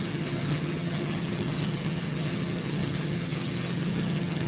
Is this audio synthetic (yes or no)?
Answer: yes